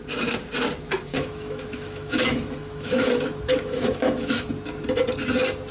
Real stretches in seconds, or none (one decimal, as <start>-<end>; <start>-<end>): 0.0-1.1; 4.5-5.7